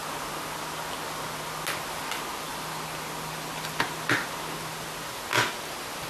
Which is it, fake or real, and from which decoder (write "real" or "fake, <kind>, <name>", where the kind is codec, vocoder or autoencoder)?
real